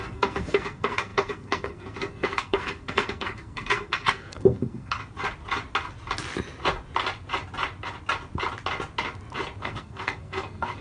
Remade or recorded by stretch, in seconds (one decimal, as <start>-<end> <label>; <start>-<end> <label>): 0.0-5.0 remade; 5.0-9.6 recorded; 9.6-10.8 remade